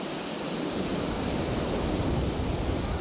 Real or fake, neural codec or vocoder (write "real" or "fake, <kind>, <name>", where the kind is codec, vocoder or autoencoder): real